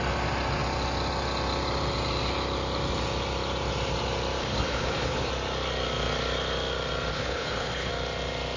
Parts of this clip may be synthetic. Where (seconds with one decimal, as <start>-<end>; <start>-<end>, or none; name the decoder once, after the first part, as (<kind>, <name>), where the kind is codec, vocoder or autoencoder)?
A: 4.4-5.3 (codec, HILCodec); 7.1-7.9